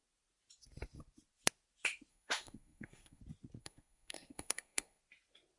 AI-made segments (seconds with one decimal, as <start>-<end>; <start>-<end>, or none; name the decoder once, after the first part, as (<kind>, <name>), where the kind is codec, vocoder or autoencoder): 2.1-3.2 (codec, SNAC); 3.6-5.0

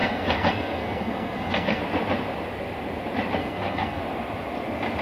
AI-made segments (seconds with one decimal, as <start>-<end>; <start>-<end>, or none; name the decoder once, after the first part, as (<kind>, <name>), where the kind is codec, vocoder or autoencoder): 0.0-1.8 (codec, SNAC); 3.4-4.0